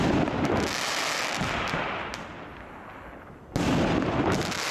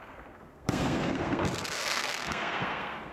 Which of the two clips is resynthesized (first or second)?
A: second